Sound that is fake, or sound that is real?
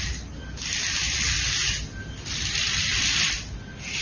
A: real